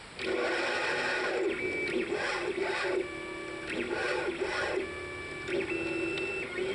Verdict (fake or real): real